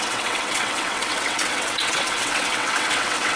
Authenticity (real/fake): fake